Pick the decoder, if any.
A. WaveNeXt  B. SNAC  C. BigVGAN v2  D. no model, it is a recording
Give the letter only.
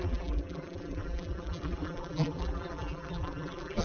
C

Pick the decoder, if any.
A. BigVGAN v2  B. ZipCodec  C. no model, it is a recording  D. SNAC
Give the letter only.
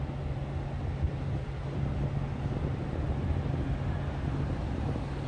C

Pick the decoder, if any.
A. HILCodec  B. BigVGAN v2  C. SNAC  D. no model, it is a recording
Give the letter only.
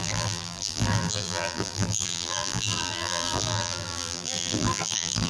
B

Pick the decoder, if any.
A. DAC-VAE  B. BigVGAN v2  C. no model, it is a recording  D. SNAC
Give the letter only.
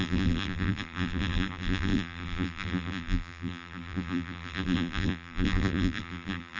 B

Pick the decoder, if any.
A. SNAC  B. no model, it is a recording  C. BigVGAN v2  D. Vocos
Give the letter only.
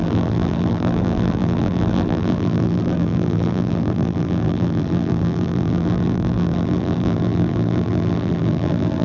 C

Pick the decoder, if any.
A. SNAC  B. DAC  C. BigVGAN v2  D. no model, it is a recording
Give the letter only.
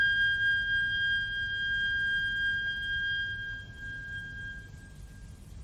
D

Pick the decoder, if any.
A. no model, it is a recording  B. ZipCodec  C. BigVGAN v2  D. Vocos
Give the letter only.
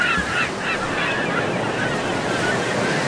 A